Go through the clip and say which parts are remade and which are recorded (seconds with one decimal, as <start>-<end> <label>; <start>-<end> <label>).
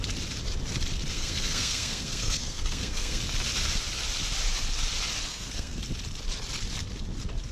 0.0-1.1 recorded; 1.1-3.2 remade; 3.2-5.3 recorded; 5.3-5.8 remade; 5.8-7.5 recorded